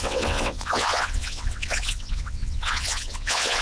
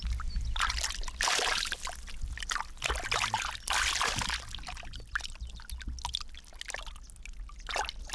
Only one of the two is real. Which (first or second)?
second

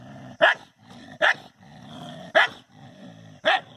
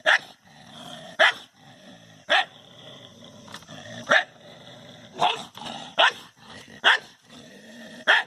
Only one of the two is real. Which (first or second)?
first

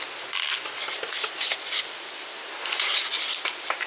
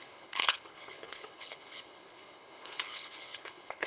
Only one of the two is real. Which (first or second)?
first